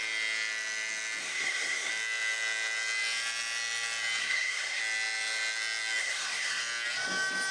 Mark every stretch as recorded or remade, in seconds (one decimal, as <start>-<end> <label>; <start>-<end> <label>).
0.0-1.2 recorded; 1.2-1.9 remade; 1.9-4.2 recorded; 4.2-4.8 remade; 4.8-6.0 recorded; 6.0-6.6 remade; 6.6-7.5 recorded